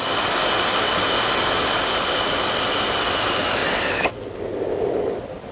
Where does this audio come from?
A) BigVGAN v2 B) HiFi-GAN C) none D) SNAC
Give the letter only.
C